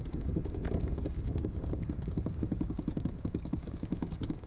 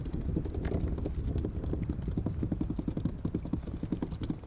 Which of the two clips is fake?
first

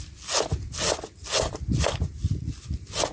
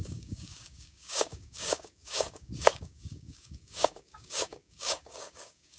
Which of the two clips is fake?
second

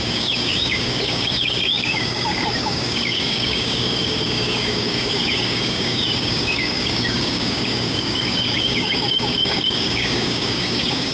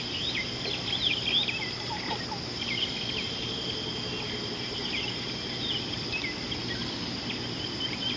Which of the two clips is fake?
first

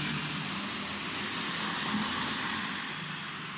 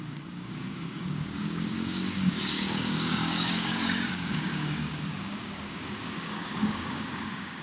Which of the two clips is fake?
second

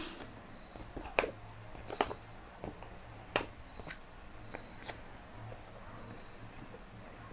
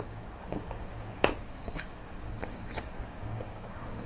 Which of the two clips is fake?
second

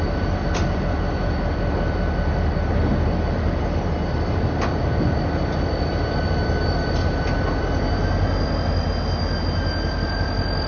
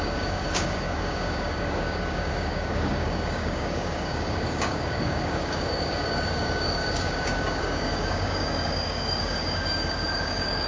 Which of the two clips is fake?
second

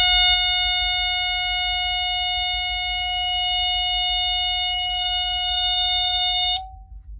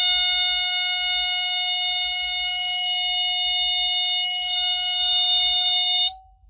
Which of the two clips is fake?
second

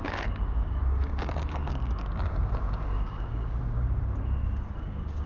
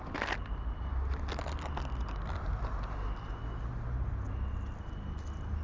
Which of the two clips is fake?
first